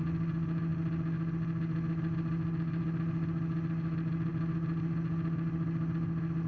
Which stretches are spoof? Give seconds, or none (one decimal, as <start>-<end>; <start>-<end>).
none